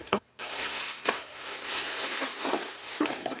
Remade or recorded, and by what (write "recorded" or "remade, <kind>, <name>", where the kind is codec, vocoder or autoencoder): remade, codec, SNAC